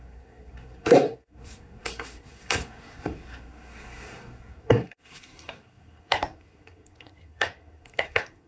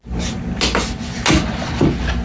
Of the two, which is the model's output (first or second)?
first